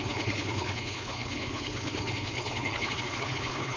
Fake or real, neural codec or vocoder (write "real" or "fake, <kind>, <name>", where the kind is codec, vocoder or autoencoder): fake, codec, HILCodec